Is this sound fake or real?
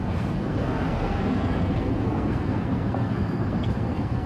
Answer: fake